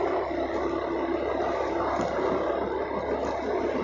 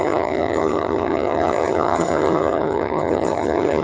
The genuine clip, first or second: first